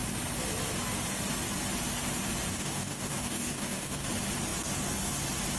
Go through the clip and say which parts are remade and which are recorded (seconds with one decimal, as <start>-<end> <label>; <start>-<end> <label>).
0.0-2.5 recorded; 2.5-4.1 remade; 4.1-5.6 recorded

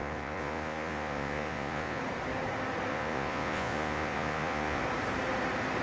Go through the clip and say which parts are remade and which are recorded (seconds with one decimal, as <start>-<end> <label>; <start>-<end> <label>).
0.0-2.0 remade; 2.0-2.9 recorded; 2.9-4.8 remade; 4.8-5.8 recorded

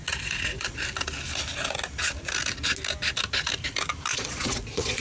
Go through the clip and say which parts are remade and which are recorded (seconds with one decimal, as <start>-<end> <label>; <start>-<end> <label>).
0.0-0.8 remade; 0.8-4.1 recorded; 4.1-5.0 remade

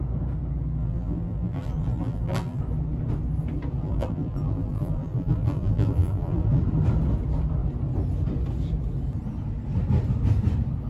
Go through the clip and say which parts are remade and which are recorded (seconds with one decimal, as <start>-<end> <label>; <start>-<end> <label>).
0.0-0.8 recorded; 0.8-2.6 remade; 2.6-3.8 recorded; 3.8-6.6 remade; 6.6-10.9 recorded

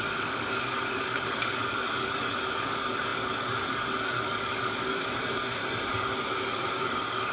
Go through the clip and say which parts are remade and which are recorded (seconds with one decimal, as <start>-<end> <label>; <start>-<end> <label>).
0.0-5.6 remade; 5.6-6.4 recorded; 6.4-7.3 remade

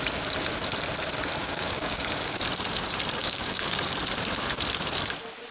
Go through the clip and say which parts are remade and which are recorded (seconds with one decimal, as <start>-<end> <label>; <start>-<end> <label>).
0.0-1.4 recorded; 1.4-2.4 remade; 2.4-3.2 recorded; 3.2-3.8 remade; 3.8-5.5 recorded